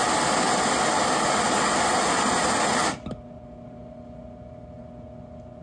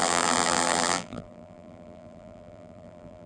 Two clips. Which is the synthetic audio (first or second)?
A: second